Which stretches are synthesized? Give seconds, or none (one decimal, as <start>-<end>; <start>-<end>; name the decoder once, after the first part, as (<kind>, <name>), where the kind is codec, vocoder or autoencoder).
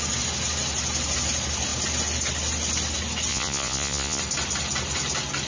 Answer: 3.3-4.2 (vocoder, Vocos)